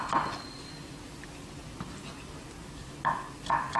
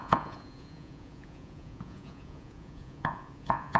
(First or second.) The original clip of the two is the first